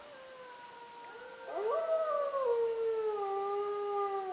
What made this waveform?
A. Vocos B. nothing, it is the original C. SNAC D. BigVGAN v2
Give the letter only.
B